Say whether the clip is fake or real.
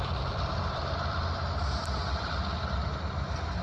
fake